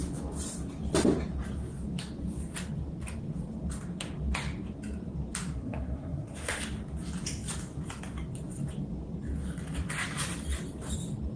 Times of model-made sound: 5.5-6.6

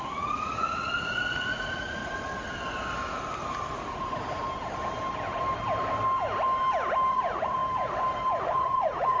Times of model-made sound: 0.0-2.0; 7.1-7.6; 8.4-9.2

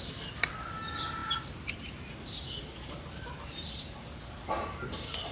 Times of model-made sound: none

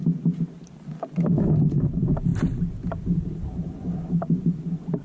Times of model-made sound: none

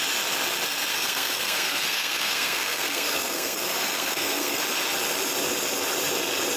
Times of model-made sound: 0.9-4.6

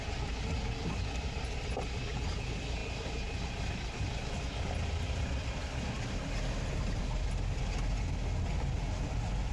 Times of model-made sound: none